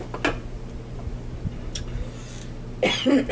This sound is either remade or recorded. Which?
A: recorded